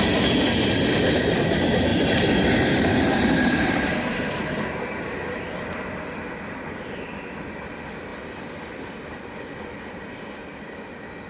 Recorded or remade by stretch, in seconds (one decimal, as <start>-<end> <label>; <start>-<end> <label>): 0.0-1.9 recorded; 1.9-4.4 remade; 4.4-8.1 recorded; 8.1-10.1 remade; 10.1-11.3 recorded